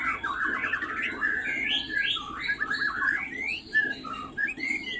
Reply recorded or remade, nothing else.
recorded